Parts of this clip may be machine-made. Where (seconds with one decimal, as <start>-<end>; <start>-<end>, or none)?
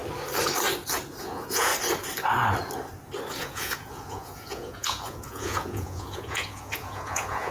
1.2-1.7; 3.4-7.5